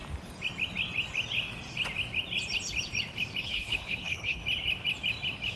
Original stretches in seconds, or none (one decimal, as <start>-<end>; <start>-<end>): 0.0-3.4; 4.4-5.6